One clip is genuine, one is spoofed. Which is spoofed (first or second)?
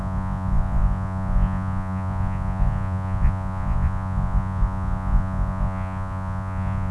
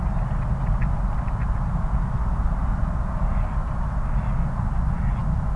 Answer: first